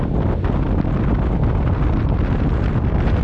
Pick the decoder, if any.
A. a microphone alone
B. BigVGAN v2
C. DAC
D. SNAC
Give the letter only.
A